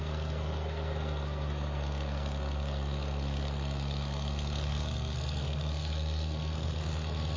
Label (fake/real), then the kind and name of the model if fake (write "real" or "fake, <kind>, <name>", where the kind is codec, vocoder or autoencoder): fake, codec, SNAC